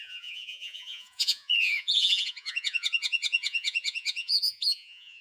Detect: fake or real fake